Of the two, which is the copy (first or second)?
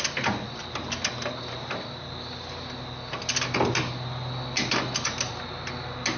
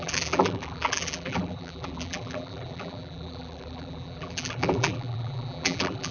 second